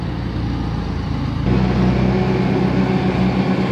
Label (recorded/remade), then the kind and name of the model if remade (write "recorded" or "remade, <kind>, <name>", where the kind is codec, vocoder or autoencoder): recorded